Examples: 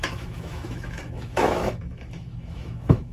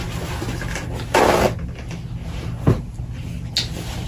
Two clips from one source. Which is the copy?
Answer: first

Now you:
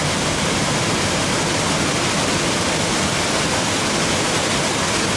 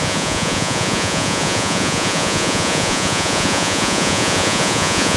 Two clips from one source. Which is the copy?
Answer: second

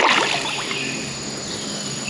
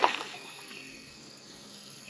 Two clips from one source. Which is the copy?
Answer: second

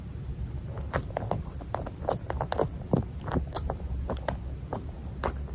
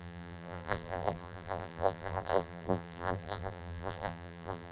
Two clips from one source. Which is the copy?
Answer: second